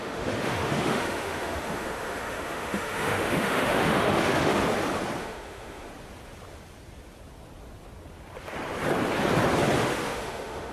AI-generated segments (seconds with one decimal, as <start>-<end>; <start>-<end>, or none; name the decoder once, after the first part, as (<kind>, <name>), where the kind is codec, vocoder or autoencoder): 0.0-4.6 (autoencoder, DAC-VAE); 5.2-5.9; 9.8-10.7